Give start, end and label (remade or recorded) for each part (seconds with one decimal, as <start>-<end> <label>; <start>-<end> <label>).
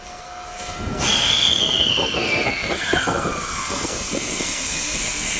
0.0-5.4 remade